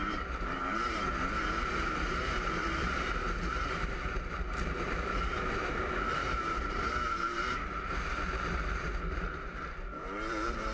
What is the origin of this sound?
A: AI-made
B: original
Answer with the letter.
A